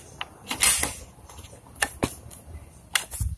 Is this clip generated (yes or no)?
no